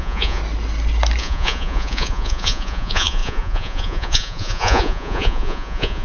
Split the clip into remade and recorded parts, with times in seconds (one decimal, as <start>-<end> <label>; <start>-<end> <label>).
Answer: 0.0-0.4 remade; 0.4-1.2 recorded; 1.2-6.0 remade